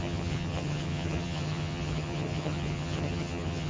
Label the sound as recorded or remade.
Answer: remade